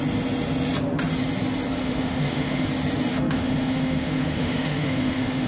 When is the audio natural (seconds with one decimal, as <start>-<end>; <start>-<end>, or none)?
0.0-1.8; 2.7-3.1